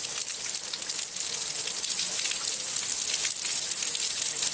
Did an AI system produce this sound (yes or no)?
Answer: no